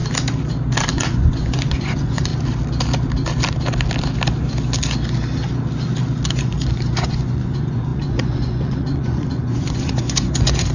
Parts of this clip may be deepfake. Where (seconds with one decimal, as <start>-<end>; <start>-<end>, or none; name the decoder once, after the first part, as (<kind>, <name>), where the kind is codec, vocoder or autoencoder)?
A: 0.9-2.3 (vocoder, Vocos); 6.3-10.7